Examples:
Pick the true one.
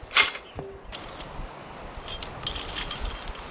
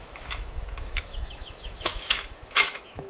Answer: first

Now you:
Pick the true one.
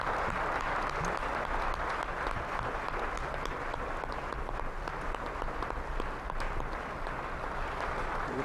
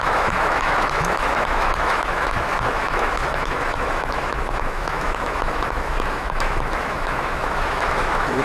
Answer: first